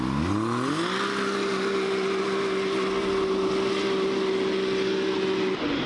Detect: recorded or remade recorded